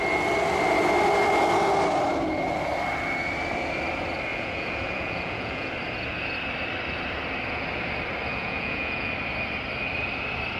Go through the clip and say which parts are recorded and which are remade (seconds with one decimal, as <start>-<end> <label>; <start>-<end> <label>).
0.0-4.3 recorded; 4.3-5.7 remade; 5.7-8.3 recorded; 8.3-9.1 remade; 9.1-10.6 recorded